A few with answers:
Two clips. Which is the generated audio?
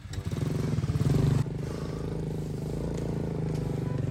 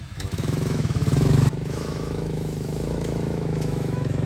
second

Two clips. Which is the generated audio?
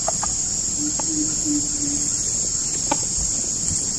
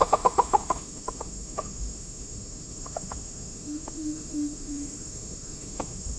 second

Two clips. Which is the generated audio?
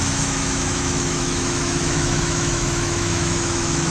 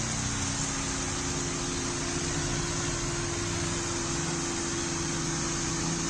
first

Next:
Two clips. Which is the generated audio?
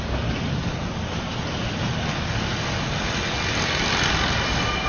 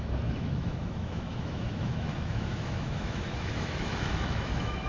second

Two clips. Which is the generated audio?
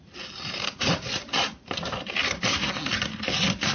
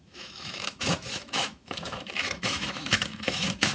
second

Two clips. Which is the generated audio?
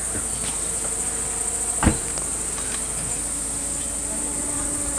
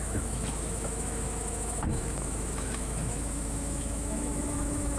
second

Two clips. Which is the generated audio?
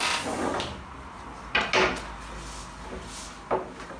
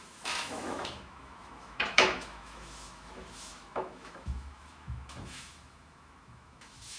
second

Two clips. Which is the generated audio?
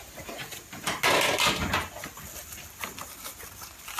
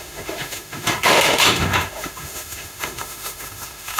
second